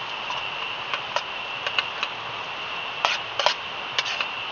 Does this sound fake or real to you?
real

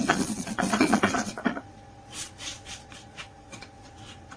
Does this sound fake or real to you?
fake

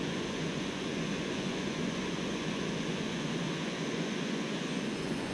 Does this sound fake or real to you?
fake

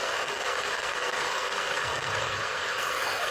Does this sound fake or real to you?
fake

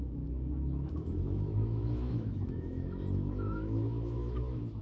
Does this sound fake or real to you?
fake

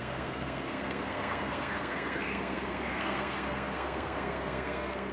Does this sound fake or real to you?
fake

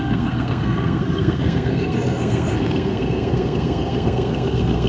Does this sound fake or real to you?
fake